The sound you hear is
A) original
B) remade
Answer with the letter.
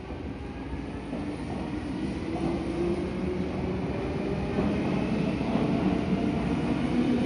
A